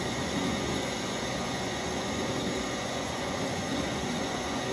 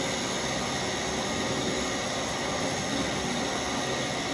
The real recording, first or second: second